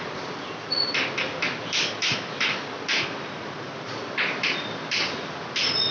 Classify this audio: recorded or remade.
recorded